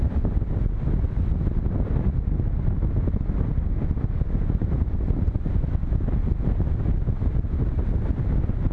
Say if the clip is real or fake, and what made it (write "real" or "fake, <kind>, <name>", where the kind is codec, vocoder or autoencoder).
real